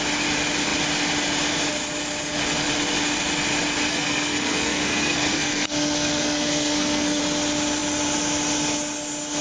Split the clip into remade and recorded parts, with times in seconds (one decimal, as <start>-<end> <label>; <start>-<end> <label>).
0.0-3.9 recorded; 3.9-7.2 remade; 7.2-9.4 recorded